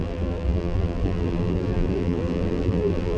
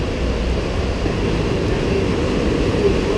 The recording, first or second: second